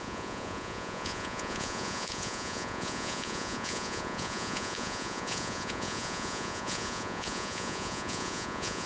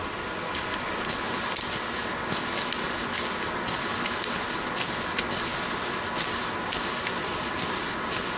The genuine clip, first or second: second